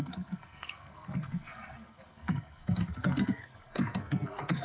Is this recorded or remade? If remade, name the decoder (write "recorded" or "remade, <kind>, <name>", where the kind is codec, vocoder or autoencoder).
remade, codec, SNAC